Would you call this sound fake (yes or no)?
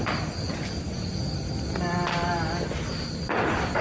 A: no